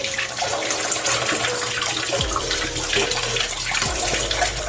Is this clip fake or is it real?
real